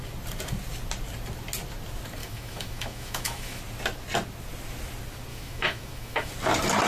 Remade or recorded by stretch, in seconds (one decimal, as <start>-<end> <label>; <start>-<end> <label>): 0.0-2.2 recorded; 2.2-3.6 remade; 3.6-5.3 recorded; 5.3-6.3 remade; 6.3-6.9 recorded